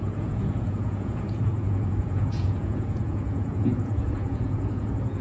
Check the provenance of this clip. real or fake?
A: fake